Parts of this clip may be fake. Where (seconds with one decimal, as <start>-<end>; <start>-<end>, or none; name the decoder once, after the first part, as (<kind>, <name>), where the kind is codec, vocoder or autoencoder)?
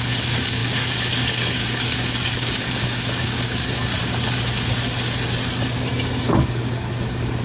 0.0-3.9 (codec, DAC); 6.3-7.4